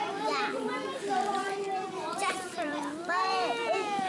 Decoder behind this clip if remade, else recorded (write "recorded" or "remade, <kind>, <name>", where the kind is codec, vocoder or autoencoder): remade, vocoder, BigVGAN v2